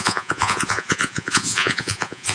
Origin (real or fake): fake